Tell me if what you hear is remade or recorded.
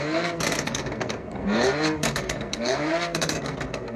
remade